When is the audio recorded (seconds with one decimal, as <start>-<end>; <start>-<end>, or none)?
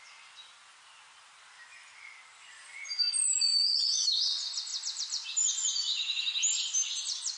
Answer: 0.0-7.4